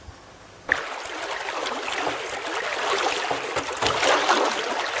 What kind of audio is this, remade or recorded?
recorded